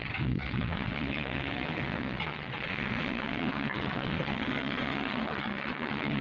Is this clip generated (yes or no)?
yes